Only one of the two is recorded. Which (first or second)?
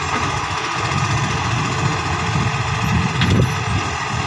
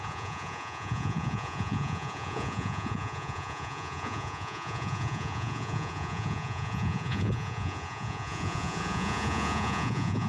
first